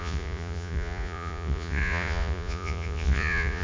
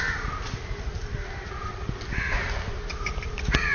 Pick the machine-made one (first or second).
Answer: first